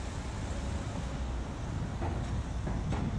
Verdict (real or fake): real